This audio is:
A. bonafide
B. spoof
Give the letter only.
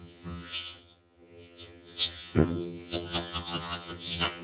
B